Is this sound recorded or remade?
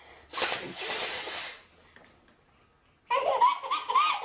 recorded